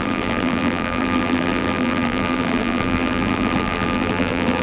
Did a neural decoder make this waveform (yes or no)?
yes